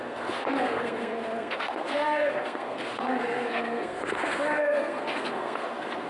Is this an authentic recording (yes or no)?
no